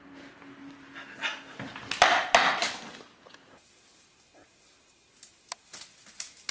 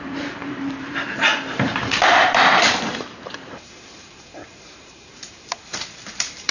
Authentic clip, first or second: first